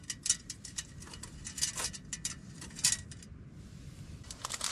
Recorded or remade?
recorded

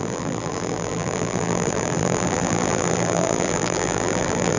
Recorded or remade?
remade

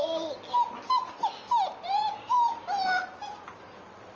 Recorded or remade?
recorded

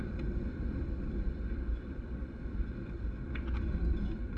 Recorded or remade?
remade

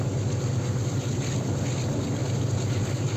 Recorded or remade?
recorded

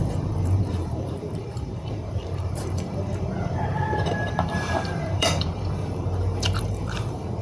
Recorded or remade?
remade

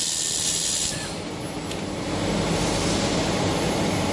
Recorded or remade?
recorded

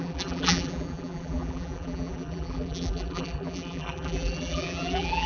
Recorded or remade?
remade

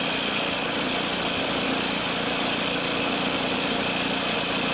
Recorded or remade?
remade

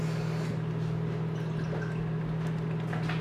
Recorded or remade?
recorded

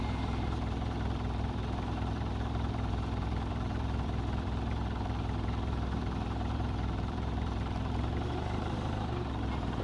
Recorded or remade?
remade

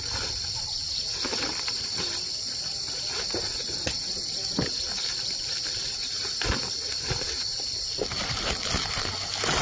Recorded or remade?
remade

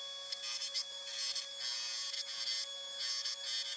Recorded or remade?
recorded